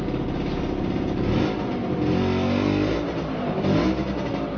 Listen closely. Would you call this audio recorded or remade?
recorded